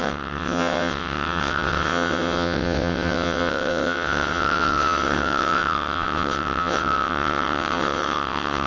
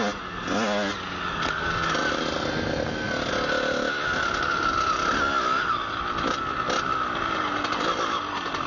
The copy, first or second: first